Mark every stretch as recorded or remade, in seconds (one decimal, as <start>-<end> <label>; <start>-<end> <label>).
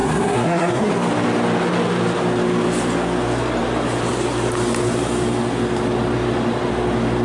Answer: 0.0-0.9 remade; 0.9-7.2 recorded